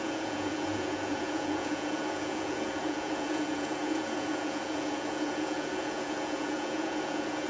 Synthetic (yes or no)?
yes